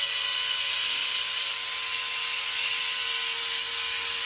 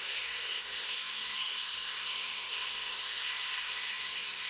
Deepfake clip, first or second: second